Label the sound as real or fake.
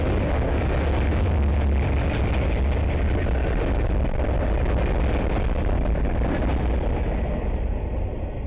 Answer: real